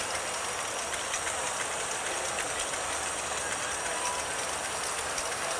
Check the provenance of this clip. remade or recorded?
recorded